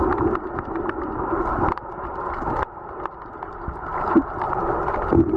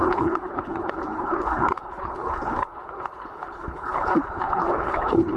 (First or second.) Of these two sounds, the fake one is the second